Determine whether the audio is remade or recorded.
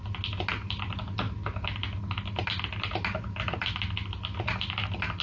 recorded